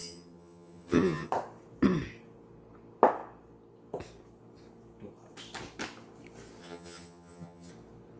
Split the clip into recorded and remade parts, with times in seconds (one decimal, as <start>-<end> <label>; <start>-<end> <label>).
0.0-1.3 remade; 1.3-6.6 recorded; 6.6-7.7 remade; 7.7-8.2 recorded